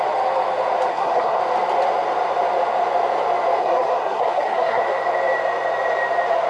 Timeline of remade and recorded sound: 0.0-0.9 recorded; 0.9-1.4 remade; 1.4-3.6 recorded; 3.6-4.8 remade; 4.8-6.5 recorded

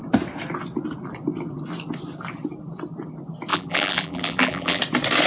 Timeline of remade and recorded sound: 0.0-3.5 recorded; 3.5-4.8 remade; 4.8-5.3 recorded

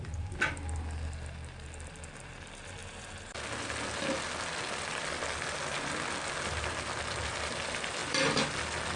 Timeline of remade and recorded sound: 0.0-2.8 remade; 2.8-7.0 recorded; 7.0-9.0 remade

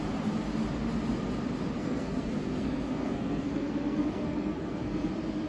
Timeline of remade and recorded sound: 0.0-1.8 recorded; 1.8-5.1 remade; 5.1-5.5 recorded

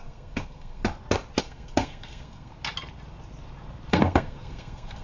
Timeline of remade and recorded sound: 0.0-0.8 remade; 0.8-1.4 recorded; 1.4-2.5 remade; 2.5-3.9 recorded; 3.9-5.0 remade

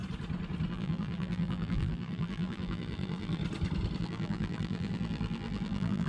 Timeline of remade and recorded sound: 0.0-0.7 recorded; 0.7-3.4 remade; 3.4-4.0 recorded; 4.0-6.1 remade

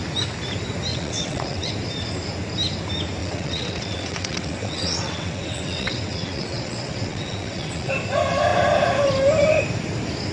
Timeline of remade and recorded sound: 0.0-0.9 recorded; 0.9-1.7 remade; 1.7-3.2 recorded; 3.2-7.9 remade; 7.9-10.3 recorded

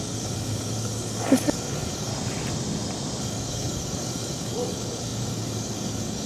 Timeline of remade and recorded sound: 0.0-2.1 remade; 2.1-3.2 recorded; 3.2-6.3 remade